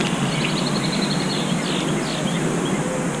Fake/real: real